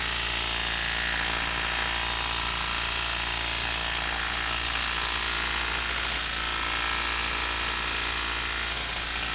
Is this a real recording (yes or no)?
yes